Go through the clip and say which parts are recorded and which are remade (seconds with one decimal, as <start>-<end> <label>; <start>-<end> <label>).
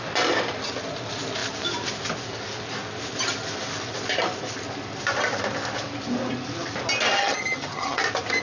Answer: 0.0-7.2 recorded; 7.2-8.0 remade; 8.0-8.4 recorded